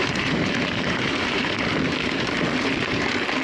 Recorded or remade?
remade